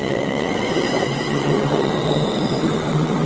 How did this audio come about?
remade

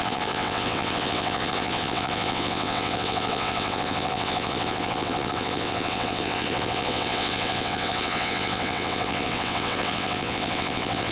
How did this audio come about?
remade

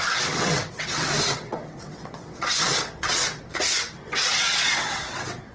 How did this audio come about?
remade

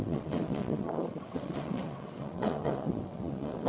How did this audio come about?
remade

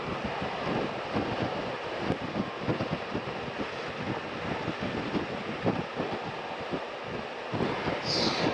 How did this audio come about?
recorded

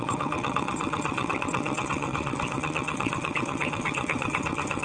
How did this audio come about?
remade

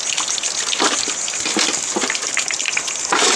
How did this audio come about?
recorded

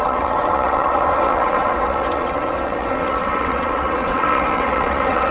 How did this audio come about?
remade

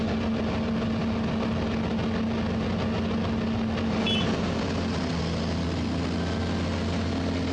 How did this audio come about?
recorded